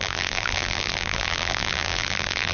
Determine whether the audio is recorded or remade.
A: remade